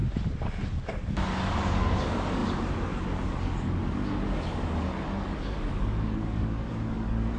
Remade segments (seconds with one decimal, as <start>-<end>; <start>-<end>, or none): 1.1-7.4